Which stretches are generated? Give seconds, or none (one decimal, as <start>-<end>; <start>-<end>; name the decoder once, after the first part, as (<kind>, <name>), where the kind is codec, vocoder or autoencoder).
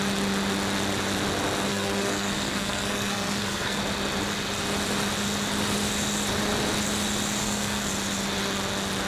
1.7-3.8 (codec, SNAC); 7.4-7.9